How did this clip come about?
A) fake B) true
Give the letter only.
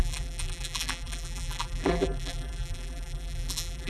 A